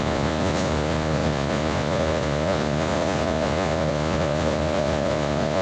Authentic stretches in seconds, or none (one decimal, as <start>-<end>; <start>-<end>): none